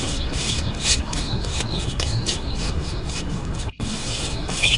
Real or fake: fake